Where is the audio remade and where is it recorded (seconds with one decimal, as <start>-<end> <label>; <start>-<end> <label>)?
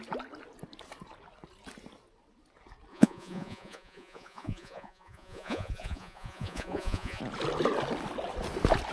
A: 0.0-2.9 recorded; 2.9-7.2 remade; 7.2-8.9 recorded